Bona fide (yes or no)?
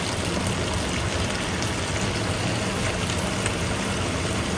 yes